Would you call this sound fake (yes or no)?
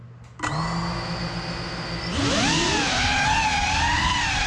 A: no